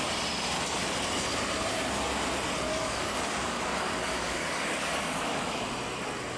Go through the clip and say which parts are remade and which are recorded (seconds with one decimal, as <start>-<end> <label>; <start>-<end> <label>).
0.0-2.7 recorded; 2.7-5.6 remade; 5.6-6.4 recorded